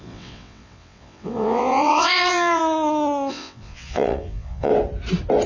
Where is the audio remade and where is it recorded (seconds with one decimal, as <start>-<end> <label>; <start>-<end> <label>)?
0.0-2.6 remade; 2.6-3.3 recorded; 3.3-4.7 remade; 4.7-5.5 recorded